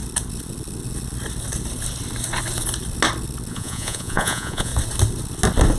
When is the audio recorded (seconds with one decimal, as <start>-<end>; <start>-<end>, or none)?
0.0-3.5; 4.7-5.8